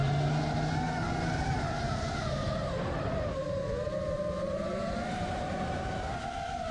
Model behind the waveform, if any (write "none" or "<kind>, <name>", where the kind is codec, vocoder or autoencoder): vocoder, BigVGAN v2